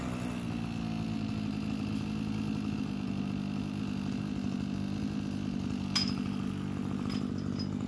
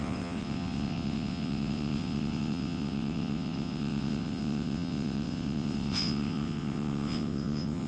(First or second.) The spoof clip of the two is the second